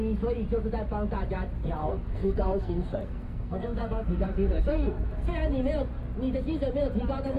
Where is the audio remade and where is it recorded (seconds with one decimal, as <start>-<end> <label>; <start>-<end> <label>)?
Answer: 0.0-1.8 recorded; 1.8-5.3 remade; 5.3-7.4 recorded